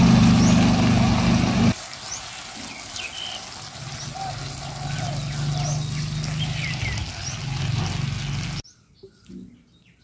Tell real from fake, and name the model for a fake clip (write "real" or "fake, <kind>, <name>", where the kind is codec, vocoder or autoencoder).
real